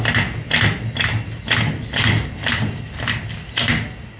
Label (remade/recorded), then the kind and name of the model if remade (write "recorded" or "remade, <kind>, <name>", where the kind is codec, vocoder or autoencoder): recorded